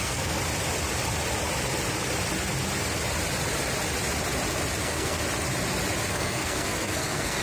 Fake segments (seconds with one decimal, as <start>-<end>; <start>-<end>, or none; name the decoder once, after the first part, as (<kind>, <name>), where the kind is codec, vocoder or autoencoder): 0.0-0.4 (codec, SNAC); 4.8-5.2; 6.1-7.4

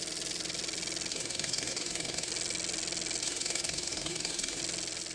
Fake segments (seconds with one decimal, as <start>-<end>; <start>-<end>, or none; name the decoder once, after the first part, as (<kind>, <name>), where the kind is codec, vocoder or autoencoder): 1.1-2.3 (codec, SNAC); 3.2-4.6

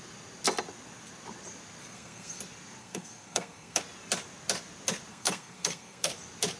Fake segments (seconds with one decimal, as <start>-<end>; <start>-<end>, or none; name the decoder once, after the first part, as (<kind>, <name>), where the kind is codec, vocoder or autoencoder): 1.8-2.4 (codec, SNAC); 2.8-3.8; 5.1-6.1

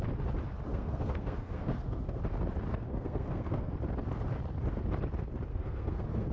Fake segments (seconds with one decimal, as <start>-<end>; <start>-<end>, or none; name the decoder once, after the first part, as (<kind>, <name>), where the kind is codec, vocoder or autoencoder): 0.7-2.2 (codec, SNAC); 2.7-3.7; 5.5-6.3

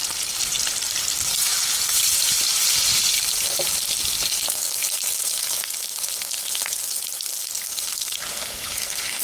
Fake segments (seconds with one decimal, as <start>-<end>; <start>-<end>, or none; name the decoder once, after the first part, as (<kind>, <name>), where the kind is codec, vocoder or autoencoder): 4.3-9.2 (codec, SNAC)

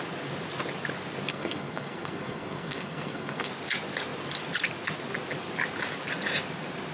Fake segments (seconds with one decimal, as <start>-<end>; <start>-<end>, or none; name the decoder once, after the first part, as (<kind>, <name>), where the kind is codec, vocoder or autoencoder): 1.3-3.5 (codec, SNAC)

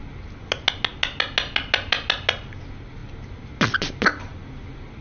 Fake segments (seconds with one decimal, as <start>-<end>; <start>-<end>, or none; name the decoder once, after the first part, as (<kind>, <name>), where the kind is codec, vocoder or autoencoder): none